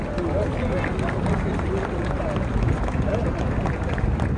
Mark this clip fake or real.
real